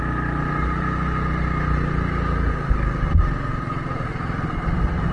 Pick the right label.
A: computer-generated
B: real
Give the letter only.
B